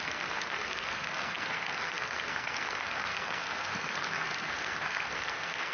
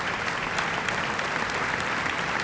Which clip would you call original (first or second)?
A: second